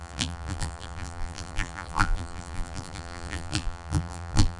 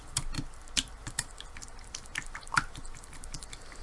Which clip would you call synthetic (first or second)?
first